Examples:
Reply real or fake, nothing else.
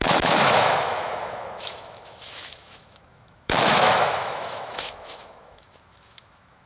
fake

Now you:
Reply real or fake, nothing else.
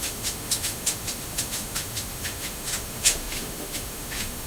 fake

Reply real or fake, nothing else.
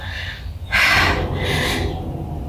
real